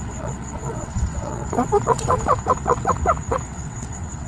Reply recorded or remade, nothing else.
remade